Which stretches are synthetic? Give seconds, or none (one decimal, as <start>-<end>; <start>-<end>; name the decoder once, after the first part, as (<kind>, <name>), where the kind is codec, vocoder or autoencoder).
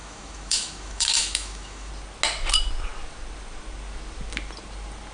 0.0-1.9 (autoencoder, DAC-VAE)